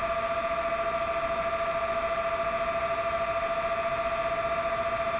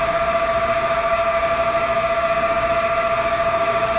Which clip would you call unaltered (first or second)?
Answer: first